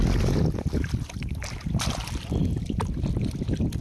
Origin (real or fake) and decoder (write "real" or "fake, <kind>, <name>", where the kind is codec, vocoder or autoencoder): real